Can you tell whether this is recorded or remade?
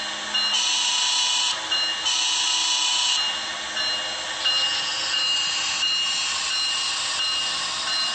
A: recorded